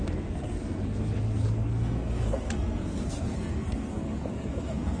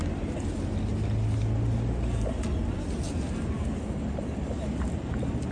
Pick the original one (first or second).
second